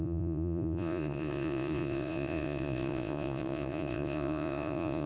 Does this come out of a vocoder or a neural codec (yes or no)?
yes